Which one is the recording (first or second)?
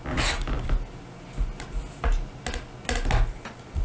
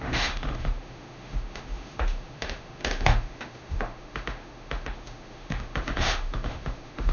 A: first